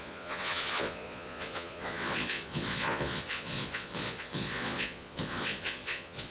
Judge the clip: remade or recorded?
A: remade